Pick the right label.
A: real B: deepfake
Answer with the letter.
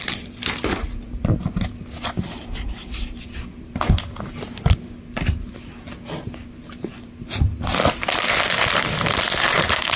A